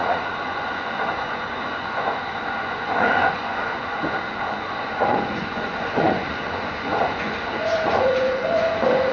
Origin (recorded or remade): remade